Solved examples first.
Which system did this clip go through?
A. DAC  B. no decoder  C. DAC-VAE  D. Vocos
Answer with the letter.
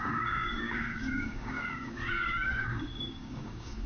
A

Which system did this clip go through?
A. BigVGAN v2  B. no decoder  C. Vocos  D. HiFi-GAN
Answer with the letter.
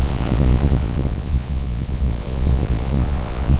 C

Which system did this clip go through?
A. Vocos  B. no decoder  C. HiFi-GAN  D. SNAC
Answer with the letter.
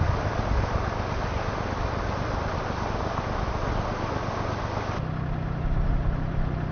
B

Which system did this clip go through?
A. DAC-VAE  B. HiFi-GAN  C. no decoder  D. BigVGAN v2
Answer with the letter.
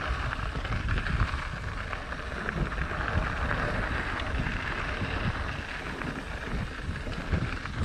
C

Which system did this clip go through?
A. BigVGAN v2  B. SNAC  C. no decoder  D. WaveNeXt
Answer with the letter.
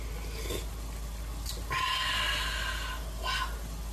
C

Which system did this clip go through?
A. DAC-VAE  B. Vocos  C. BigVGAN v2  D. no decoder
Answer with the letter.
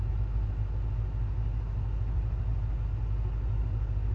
D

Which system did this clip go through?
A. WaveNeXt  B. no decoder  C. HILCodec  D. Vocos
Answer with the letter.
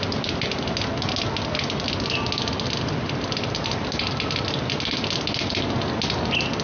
B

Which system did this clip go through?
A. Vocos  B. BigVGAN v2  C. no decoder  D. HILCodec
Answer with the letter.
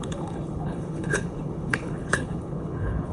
D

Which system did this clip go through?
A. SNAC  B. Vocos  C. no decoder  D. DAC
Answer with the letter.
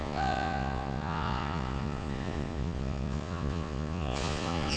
B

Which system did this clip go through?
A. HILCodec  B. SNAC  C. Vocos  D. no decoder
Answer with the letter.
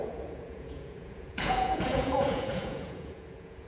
C